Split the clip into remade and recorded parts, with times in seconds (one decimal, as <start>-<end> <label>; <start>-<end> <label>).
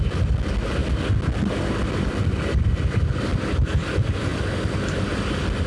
0.0-5.7 recorded